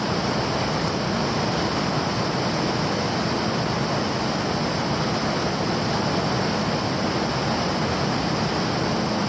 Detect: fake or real real